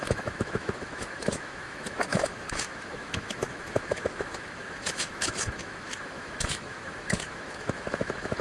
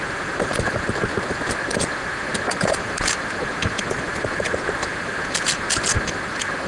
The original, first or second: second